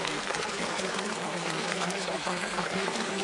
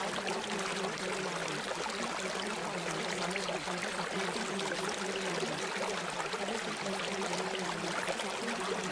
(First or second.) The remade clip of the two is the first